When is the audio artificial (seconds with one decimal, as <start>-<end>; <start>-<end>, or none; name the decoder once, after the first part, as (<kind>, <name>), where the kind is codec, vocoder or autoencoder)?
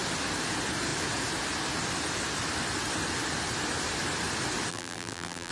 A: 4.7-5.5 (vocoder, BigVGAN v2)